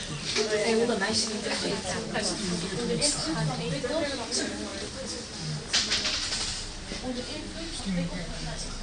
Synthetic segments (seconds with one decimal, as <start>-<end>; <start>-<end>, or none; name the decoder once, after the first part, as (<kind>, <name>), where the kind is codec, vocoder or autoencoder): 0.6-1.8 (autoencoder, DAC-VAE)